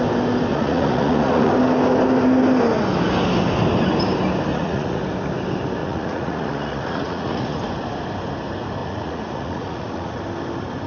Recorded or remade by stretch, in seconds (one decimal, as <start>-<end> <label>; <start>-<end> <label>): 0.0-0.5 recorded; 0.5-1.5 remade; 1.5-4.5 recorded; 4.5-5.0 remade; 5.0-5.8 recorded; 5.8-7.6 remade; 7.6-8.8 recorded; 8.8-10.2 remade; 10.2-10.9 recorded